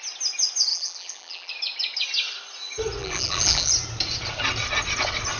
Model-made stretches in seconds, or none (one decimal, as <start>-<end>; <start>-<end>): 0.7-1.5; 3.0-3.7

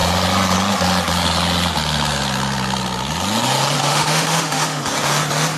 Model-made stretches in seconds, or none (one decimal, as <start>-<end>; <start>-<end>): 3.8-4.8

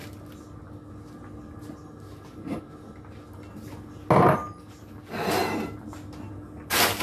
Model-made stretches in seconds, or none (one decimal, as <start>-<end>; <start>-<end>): none

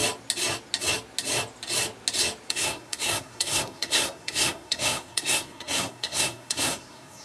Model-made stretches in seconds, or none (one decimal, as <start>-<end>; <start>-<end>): 2.5-7.2

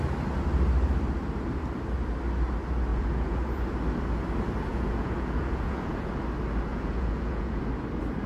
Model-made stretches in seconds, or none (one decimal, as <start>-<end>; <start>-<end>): 2.9-3.6; 4.7-6.1; 6.7-7.6

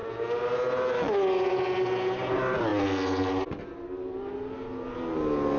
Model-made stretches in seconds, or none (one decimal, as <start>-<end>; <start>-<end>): none